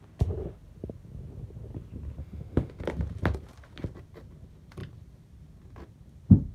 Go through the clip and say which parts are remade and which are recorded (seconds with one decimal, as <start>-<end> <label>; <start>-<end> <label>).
0.0-2.2 recorded; 2.2-2.8 remade; 2.8-6.5 recorded